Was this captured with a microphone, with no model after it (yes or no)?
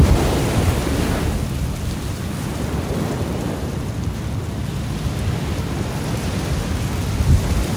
yes